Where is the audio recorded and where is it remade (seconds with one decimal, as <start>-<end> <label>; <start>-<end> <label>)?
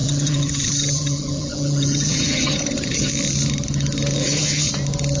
0.0-3.1 remade; 3.1-4.2 recorded; 4.2-4.7 remade; 4.7-5.2 recorded